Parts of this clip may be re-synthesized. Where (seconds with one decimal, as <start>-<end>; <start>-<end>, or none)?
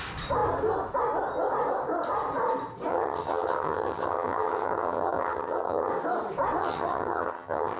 2.9-5.9; 6.6-7.8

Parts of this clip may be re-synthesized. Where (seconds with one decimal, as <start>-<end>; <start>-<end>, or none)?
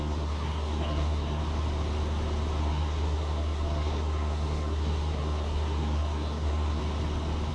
0.0-1.4; 2.6-6.8